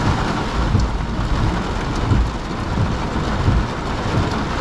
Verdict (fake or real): real